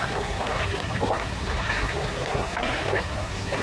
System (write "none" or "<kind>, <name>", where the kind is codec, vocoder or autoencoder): codec, SNAC